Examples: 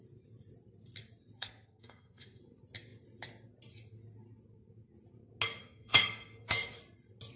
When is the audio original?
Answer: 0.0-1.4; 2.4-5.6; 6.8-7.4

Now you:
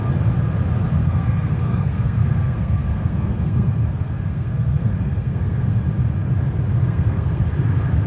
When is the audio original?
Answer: 0.0-1.0; 5.8-6.7; 7.5-8.1

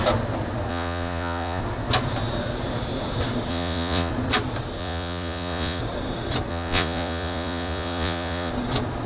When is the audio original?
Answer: 0.0-0.7; 1.6-3.5; 4.1-4.8; 5.8-6.5; 8.5-9.1